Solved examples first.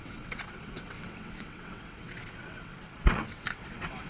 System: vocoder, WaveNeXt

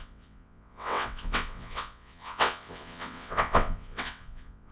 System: vocoder, WaveNeXt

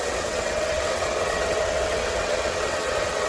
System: vocoder, WaveNeXt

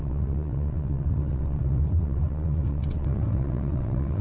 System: vocoder, WaveNeXt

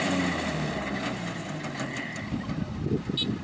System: none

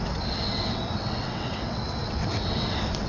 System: vocoder, WaveNeXt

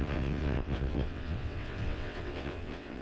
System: vocoder, WaveNeXt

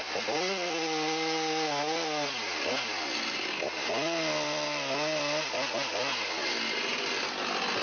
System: none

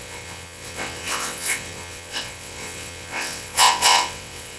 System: vocoder, WaveNeXt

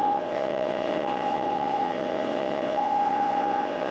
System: vocoder, WaveNeXt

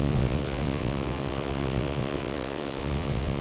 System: vocoder, WaveNeXt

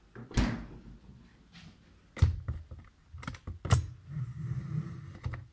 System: none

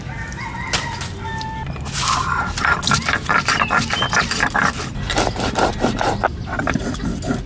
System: none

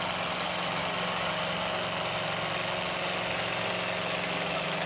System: none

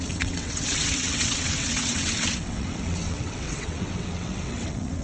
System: vocoder, WaveNeXt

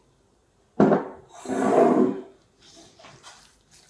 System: none